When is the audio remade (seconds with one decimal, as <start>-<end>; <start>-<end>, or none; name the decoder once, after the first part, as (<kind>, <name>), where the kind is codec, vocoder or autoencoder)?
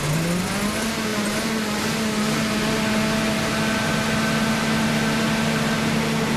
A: none